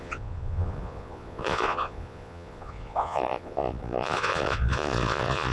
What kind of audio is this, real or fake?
fake